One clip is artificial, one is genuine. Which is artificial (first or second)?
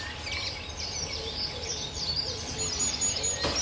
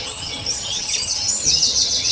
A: second